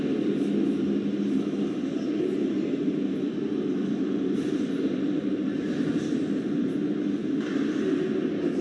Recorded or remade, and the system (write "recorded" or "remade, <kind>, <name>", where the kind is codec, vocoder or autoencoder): recorded